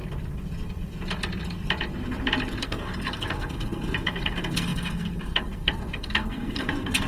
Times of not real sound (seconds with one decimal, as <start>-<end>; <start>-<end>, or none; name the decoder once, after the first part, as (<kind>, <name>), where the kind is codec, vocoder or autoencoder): 2.6-7.1 (codec, SNAC)